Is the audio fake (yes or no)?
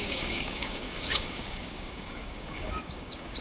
yes